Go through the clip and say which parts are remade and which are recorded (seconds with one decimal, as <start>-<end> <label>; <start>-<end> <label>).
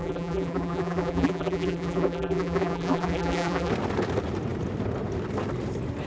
0.0-3.7 remade; 3.7-6.1 recorded